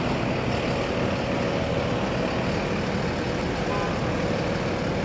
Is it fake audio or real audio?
real